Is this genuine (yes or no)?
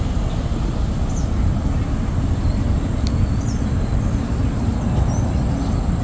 yes